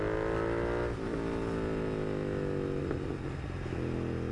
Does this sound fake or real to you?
real